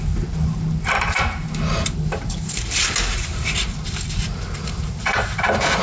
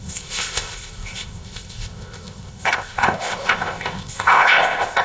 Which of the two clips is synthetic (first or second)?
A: second